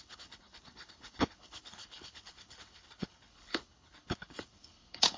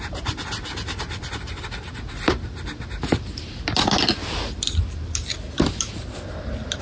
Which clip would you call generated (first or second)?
first